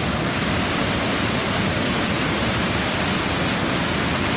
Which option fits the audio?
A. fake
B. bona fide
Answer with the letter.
B